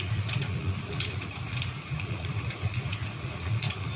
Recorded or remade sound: remade